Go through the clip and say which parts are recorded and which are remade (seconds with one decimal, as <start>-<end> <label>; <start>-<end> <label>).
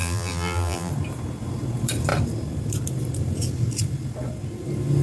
0.0-0.9 remade; 0.9-5.0 recorded